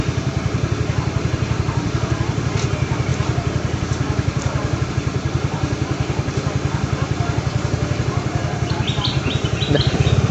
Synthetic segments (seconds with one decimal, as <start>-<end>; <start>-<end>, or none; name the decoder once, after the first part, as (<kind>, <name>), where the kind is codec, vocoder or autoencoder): 0.0-10.3 (vocoder, BigVGAN v2)